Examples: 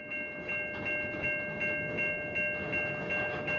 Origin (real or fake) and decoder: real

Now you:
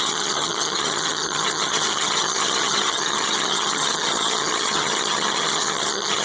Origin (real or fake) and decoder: fake, vocoder, HiFi-GAN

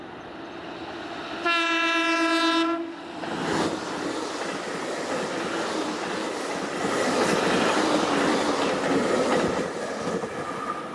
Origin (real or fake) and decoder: real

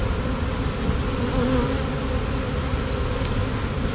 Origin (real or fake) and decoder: real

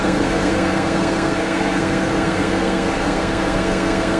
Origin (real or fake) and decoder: fake, codec, SNAC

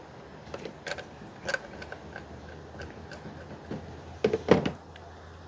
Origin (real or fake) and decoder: real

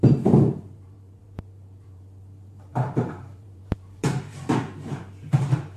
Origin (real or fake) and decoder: fake, vocoder, BigVGAN v2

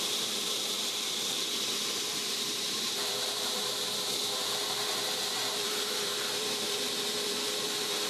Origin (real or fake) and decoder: fake, vocoder, BigVGAN v2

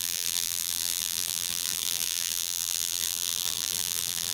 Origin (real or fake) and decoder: fake, vocoder, BigVGAN v2